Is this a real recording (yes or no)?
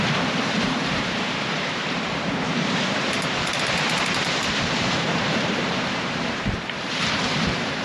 no